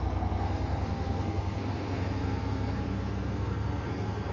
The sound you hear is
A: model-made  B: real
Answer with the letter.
A